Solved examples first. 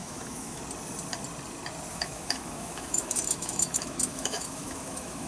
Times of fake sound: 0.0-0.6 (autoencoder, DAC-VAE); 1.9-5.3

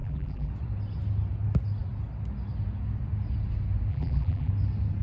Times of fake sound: 0.0-0.5 (vocoder, BigVGAN v2); 3.9-4.5

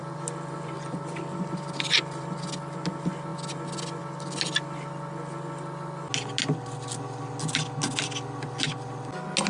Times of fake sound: 0.0-2.4 (vocoder, BigVGAN v2)